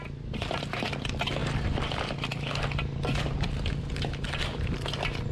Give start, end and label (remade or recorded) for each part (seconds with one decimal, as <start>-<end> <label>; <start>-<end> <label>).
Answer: 0.0-5.3 recorded